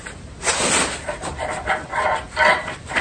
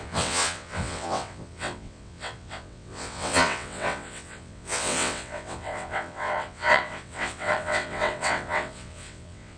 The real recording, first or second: first